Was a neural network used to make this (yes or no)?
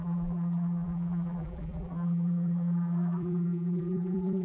yes